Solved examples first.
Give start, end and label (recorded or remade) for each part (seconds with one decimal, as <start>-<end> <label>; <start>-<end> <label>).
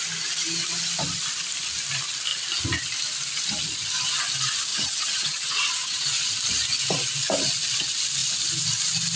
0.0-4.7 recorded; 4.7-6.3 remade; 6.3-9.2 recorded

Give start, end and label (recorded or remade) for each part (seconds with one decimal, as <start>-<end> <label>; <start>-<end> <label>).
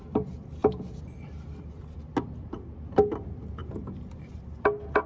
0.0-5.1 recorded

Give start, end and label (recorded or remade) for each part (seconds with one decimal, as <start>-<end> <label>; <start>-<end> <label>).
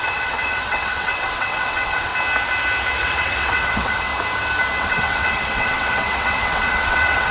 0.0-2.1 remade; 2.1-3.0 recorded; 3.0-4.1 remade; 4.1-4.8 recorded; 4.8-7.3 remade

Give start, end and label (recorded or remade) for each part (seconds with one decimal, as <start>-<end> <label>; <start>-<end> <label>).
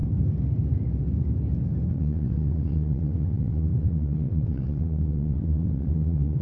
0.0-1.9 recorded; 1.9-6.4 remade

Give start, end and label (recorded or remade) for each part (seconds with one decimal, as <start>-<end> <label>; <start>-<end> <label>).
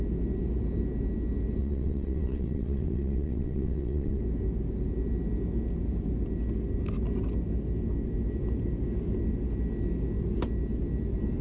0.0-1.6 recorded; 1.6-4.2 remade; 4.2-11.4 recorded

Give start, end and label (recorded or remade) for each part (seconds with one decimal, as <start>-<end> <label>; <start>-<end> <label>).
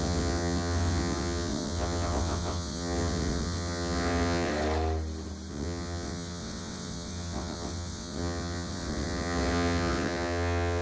0.0-4.5 remade; 4.5-5.5 recorded; 5.5-10.8 remade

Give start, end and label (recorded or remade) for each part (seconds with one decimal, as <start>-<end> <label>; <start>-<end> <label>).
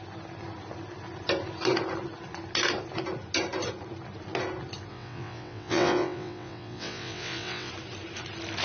0.0-4.9 recorded; 4.9-7.7 remade; 7.7-8.6 recorded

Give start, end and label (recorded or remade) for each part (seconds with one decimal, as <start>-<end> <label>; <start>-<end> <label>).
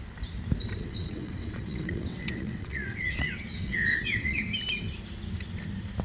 0.0-0.8 recorded; 0.8-4.4 remade; 4.4-6.0 recorded